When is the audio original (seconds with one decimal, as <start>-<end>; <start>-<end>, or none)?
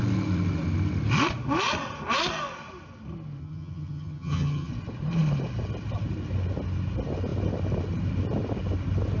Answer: 0.0-3.4; 4.7-9.2